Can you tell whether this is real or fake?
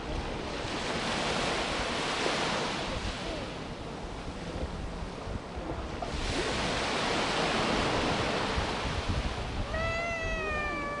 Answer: real